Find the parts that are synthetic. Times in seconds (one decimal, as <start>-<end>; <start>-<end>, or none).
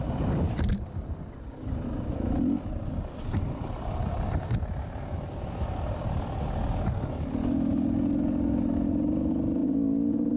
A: none